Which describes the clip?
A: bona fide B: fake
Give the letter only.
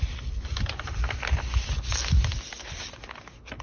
A